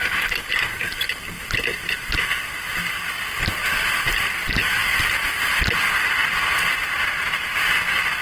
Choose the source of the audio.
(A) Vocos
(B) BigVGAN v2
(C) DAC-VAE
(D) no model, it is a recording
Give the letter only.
D